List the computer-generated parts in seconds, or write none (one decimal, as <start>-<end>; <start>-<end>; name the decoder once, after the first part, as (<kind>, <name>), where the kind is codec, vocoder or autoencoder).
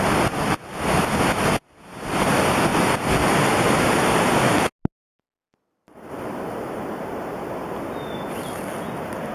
none